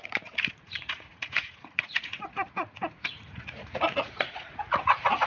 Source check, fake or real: fake